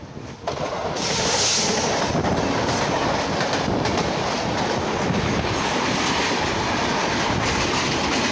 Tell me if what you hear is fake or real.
real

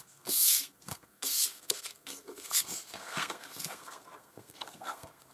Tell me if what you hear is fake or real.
fake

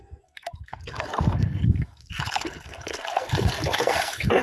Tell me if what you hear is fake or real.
fake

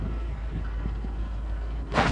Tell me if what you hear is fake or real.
fake